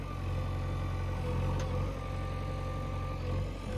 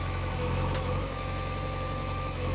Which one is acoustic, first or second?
first